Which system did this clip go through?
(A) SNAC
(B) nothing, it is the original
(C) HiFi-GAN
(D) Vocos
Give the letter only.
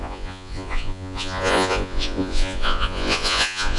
D